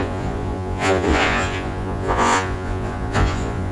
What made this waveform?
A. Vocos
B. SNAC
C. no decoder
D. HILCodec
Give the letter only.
A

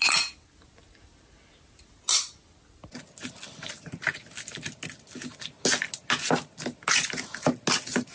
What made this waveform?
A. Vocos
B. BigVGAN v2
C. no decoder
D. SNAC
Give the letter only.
C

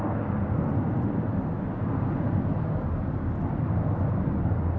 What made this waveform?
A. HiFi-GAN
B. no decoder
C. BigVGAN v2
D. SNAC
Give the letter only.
B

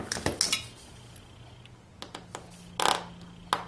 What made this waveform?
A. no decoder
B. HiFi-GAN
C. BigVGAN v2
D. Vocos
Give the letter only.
A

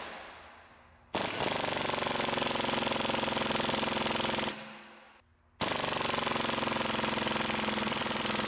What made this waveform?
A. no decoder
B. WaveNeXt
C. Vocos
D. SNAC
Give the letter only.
A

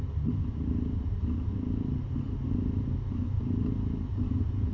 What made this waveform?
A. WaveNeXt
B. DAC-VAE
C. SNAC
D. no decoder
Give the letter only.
D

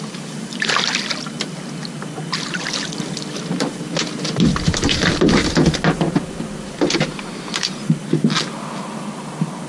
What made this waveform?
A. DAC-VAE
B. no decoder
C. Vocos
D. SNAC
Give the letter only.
B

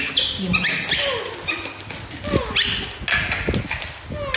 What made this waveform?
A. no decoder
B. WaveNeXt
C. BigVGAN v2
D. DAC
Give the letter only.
A